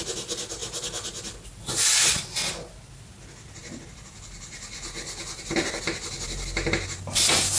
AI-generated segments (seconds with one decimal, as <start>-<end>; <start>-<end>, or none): none